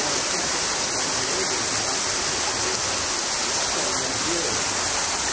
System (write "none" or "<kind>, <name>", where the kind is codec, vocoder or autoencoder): none